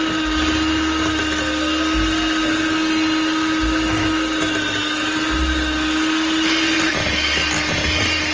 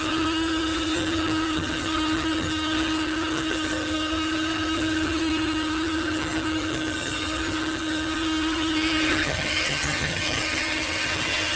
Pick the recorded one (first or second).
first